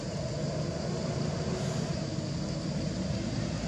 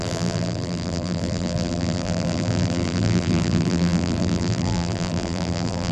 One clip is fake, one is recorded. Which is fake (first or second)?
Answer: second